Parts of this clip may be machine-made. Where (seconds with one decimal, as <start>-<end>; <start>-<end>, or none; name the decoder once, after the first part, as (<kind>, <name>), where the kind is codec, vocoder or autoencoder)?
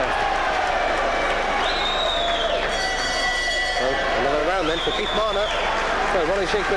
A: 4.4-5.0 (autoencoder, DAC-VAE)